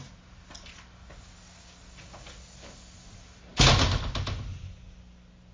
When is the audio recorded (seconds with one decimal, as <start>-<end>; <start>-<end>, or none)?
0.0-5.5